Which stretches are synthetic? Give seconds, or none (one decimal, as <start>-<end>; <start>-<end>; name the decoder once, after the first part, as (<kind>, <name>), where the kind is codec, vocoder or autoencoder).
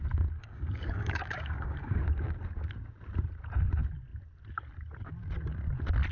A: 0.4-2.0 (codec, DAC)